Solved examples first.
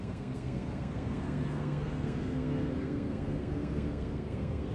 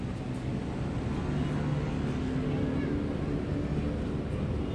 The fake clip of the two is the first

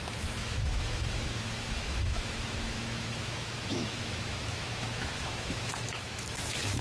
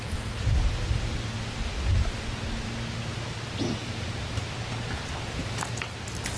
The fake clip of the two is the first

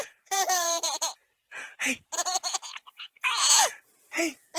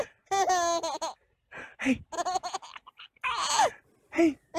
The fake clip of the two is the first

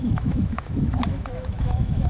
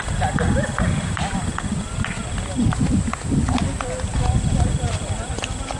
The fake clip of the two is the first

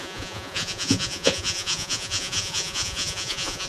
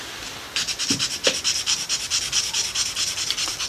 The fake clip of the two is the first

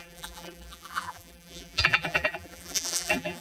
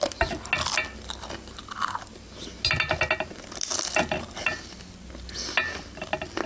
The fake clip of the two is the first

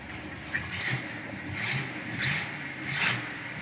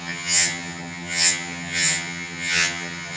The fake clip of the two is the second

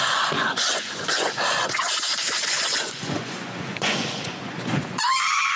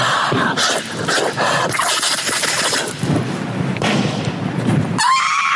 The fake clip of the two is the first